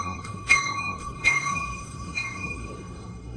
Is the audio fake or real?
fake